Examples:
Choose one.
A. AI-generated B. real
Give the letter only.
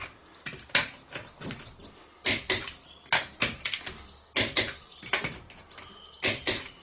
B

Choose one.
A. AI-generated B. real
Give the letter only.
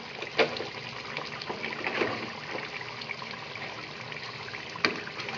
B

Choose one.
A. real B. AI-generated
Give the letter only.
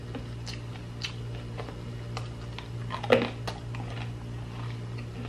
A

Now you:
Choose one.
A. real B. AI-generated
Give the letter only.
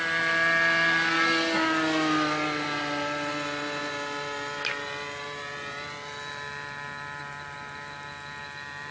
A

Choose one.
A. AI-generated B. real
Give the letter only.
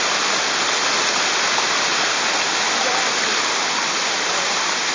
B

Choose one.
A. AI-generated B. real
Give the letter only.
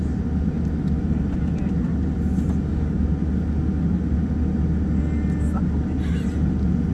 B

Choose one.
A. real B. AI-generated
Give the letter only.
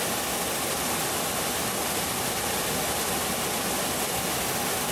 A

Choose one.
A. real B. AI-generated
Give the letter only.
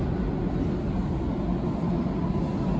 A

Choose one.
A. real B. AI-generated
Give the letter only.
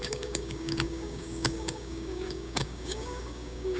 B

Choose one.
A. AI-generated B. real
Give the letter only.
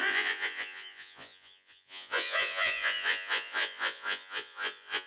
A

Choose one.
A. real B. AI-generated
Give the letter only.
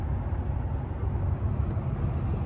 A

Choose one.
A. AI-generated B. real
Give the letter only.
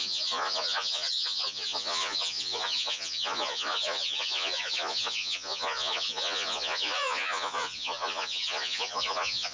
A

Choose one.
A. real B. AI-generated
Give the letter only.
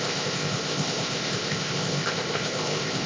B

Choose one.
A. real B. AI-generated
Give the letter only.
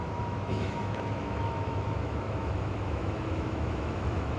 B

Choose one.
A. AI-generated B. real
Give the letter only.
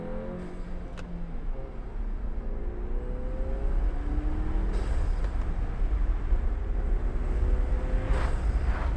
B